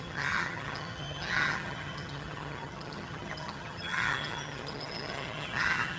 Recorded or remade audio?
remade